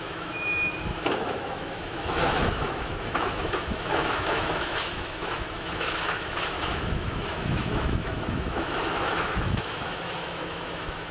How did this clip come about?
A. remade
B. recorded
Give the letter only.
A